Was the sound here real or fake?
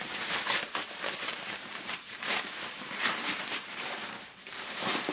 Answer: fake